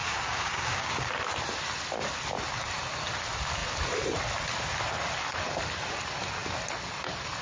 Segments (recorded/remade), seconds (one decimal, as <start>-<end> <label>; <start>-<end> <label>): 0.0-1.1 remade; 1.1-7.4 recorded